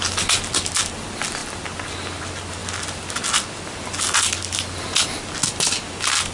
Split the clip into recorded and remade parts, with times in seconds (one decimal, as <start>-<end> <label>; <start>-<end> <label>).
0.0-6.3 recorded